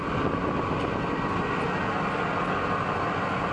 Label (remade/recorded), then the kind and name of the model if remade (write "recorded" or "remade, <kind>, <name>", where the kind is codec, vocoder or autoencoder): recorded